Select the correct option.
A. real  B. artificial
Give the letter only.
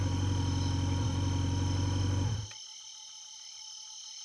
A